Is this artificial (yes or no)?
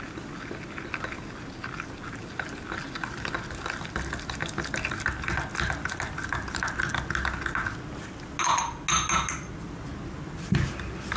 no